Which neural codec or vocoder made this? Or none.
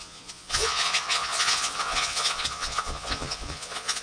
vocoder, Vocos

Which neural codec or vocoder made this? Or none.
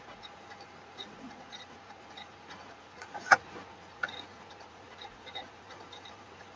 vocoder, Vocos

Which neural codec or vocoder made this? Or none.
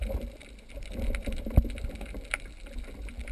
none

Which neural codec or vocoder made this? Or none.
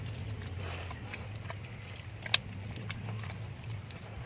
none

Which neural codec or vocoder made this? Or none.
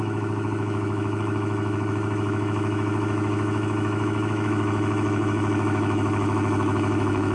autoencoder, DAC-VAE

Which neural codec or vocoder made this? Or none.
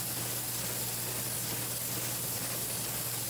none